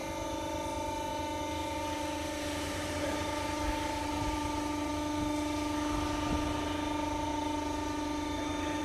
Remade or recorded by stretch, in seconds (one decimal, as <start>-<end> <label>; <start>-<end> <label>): 0.0-1.6 recorded; 1.6-4.9 remade; 4.9-7.3 recorded; 7.3-8.8 remade

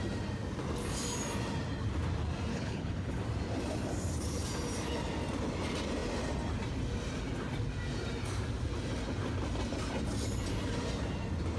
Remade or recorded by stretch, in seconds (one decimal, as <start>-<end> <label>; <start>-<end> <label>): 0.0-2.5 recorded; 2.5-3.2 remade; 3.2-11.6 recorded

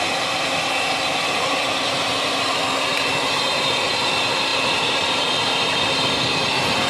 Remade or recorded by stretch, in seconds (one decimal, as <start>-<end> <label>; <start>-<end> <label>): 0.0-2.9 recorded; 2.9-4.1 remade; 4.1-4.5 recorded; 4.5-6.2 remade; 6.2-6.9 recorded

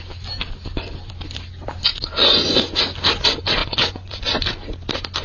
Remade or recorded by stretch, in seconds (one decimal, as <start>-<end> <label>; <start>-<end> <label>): 0.0-1.9 recorded; 1.9-2.8 remade; 2.8-3.6 recorded; 3.6-4.2 remade; 4.2-5.2 recorded

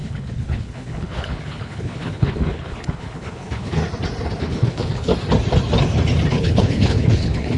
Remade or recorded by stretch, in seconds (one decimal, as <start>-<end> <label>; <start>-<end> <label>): 0.0-3.8 remade; 3.8-4.4 recorded; 4.4-5.1 remade; 5.1-6.3 recorded; 6.3-7.6 remade

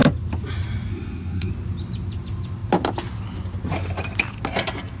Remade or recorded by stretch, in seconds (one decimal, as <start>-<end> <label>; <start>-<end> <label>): 0.0-0.9 recorded; 0.9-1.5 remade; 1.5-5.0 recorded